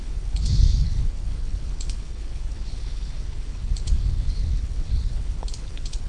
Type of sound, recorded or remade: remade